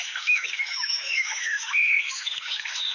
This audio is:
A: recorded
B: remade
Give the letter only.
B